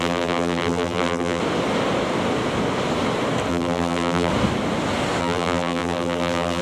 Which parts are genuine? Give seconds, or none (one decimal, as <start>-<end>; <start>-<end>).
1.4-3.5; 4.3-5.2